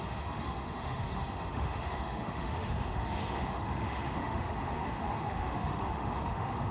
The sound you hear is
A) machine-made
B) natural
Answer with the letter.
A